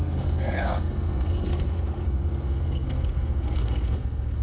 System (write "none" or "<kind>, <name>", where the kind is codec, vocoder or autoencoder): codec, SNAC